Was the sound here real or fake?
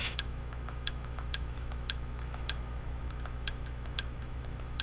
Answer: fake